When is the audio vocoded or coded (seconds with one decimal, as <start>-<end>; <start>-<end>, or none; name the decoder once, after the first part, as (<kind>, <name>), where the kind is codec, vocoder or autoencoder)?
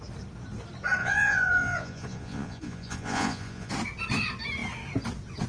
1.0-3.7 (vocoder, Vocos)